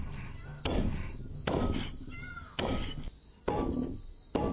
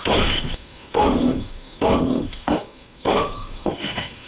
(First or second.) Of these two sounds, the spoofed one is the second